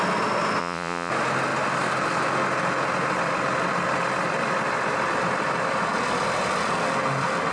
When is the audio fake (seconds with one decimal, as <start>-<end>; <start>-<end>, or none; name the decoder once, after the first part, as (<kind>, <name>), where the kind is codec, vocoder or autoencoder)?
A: 0.6-1.1 (vocoder, Vocos)